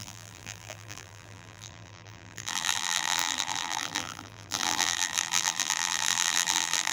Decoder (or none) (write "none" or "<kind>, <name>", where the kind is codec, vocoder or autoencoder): vocoder, BigVGAN v2